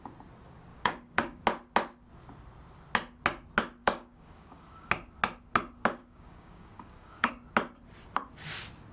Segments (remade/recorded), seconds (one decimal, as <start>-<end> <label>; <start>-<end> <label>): 0.0-0.7 recorded; 0.7-1.4 remade; 1.4-3.8 recorded; 3.8-4.9 remade; 4.9-6.0 recorded; 6.0-7.3 remade; 7.3-8.9 recorded